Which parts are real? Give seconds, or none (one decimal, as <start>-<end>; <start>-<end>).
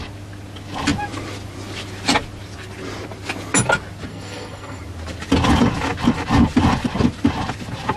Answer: 0.0-4.1; 4.8-8.0